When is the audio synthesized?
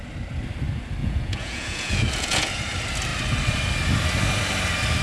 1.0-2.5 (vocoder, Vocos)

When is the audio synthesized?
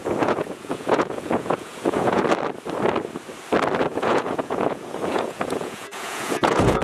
0.0-2.2 (vocoder, Vocos); 3.9-6.8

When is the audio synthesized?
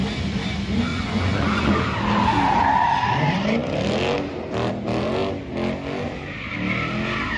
0.9-1.7 (vocoder, Vocos)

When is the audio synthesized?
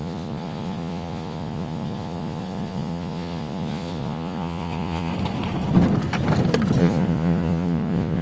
0.0-5.1 (vocoder, Vocos); 6.8-8.2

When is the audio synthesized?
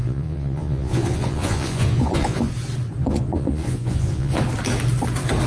0.0-2.5 (vocoder, Vocos); 3.0-4.4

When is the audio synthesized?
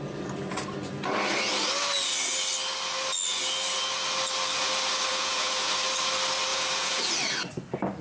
5.1-5.7 (vocoder, Vocos); 6.5-7.0